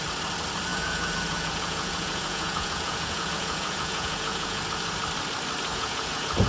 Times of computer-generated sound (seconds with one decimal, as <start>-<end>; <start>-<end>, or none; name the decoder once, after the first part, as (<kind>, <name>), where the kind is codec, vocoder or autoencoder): 0.7-4.6 (vocoder, Vocos); 5.7-6.5